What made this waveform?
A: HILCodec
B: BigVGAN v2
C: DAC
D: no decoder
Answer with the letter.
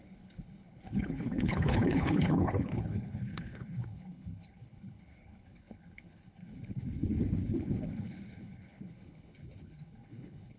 A